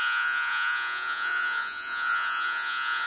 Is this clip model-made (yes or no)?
yes